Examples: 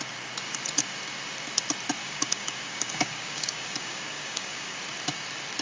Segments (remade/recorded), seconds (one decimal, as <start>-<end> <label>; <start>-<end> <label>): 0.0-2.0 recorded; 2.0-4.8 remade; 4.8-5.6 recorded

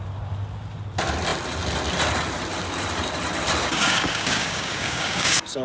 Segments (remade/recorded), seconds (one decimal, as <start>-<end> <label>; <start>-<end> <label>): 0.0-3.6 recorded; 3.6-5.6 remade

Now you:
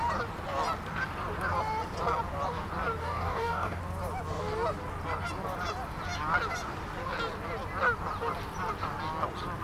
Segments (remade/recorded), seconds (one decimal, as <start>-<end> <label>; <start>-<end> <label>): 0.0-3.0 recorded; 3.0-3.8 remade; 3.8-9.6 recorded